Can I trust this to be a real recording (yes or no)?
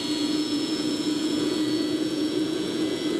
no